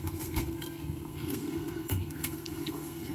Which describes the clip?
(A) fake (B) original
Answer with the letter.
A